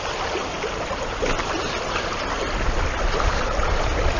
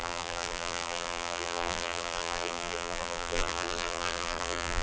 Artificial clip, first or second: second